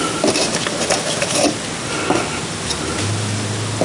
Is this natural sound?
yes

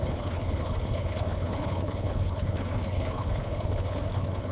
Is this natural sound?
no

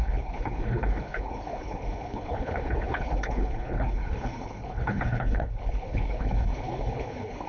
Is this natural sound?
no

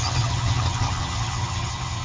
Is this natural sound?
no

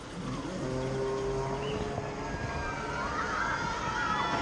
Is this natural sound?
yes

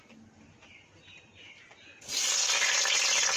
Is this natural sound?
yes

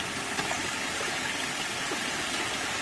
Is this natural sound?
yes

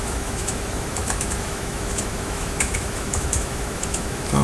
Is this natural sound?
no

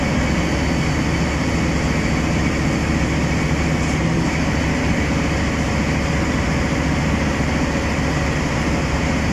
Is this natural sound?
yes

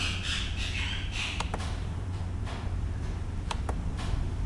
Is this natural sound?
no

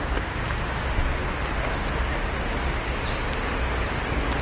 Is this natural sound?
yes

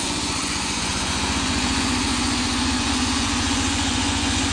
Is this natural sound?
no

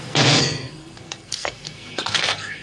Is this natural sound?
no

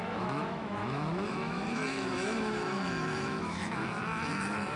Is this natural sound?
no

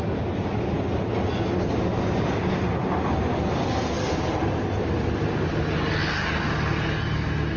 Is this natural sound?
yes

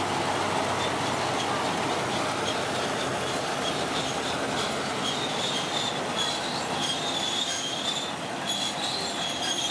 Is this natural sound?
yes